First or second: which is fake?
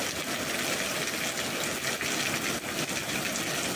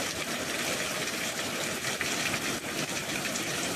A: second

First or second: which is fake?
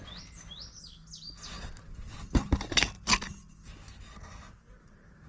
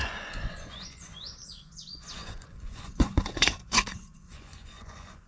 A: second